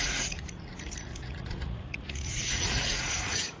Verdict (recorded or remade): remade